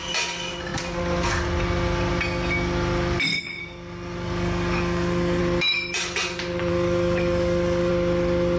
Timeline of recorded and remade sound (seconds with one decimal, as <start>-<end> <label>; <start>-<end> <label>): 0.0-3.3 recorded; 3.3-5.4 remade; 5.4-6.7 recorded; 6.7-7.9 remade; 7.9-8.6 recorded